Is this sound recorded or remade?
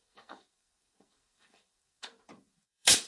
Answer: remade